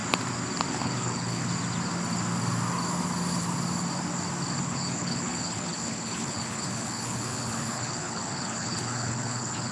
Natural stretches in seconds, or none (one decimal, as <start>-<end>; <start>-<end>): 0.0-0.7; 1.4-4.6